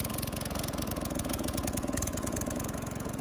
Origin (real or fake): fake